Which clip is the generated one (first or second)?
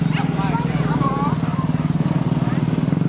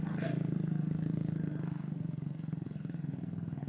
second